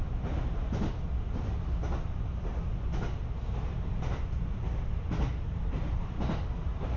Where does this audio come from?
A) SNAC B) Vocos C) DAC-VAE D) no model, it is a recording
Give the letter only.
D